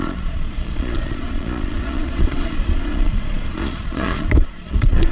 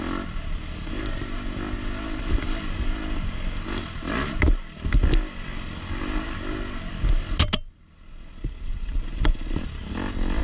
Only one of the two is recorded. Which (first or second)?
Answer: second